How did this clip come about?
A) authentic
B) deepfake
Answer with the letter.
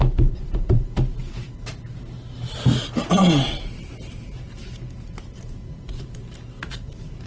B